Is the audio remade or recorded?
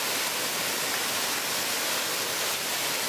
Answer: recorded